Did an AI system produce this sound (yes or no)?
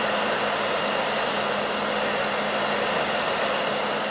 no